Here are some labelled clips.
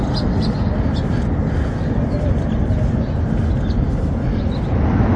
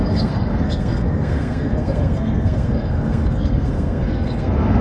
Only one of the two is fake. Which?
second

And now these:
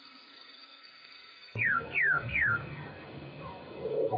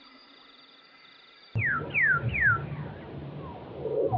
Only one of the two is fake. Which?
first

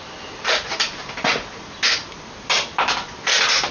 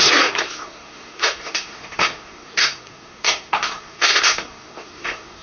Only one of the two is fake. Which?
second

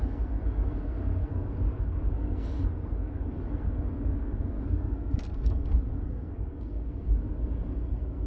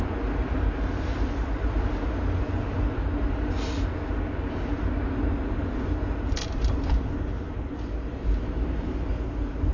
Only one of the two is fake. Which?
first